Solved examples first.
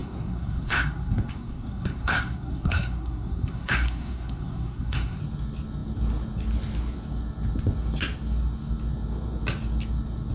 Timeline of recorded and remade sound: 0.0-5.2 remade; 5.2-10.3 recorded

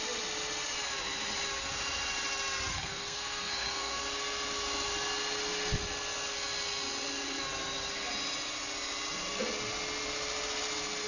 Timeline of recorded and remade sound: 0.0-2.7 recorded; 2.7-4.0 remade; 4.0-11.1 recorded

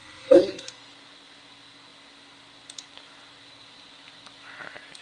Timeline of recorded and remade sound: 0.0-0.7 remade; 0.7-5.0 recorded

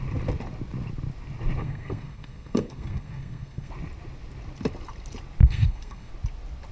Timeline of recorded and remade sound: 0.0-1.6 recorded; 1.6-3.7 remade; 3.7-5.4 recorded; 5.4-6.1 remade; 6.1-6.7 recorded